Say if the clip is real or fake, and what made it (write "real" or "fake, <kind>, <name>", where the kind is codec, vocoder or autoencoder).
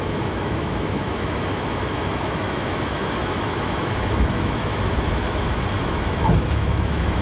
fake, autoencoder, DAC-VAE